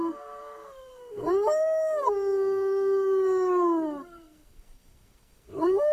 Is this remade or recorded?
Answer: remade